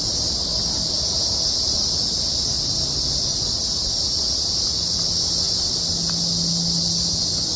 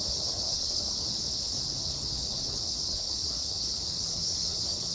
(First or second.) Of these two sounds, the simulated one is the second